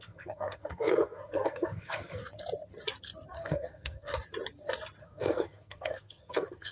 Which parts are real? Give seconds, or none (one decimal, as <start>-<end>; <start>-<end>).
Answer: 2.2-3.3; 4.1-5.0